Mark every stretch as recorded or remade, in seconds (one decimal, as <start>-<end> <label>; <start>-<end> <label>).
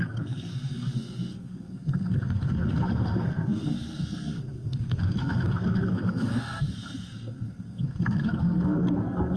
0.0-9.4 remade